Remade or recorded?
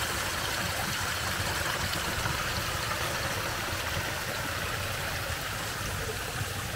recorded